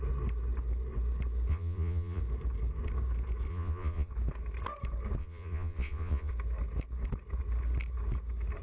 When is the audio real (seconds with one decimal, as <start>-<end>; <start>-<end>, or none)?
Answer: 0.0-1.5; 2.2-3.5; 4.1-5.2; 6.3-8.6